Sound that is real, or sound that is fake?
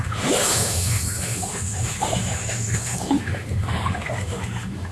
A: fake